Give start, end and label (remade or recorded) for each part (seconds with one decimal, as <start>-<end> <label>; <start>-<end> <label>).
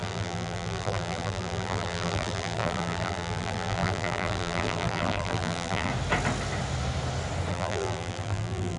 0.0-5.9 remade; 5.9-7.5 recorded; 7.5-8.8 remade